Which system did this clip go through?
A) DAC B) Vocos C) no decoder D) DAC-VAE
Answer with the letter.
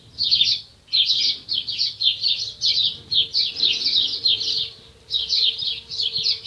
C